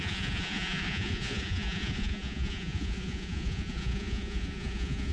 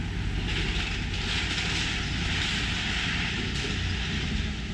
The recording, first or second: second